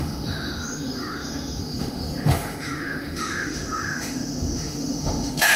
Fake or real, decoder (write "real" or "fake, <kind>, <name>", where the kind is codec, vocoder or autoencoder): fake, autoencoder, DAC-VAE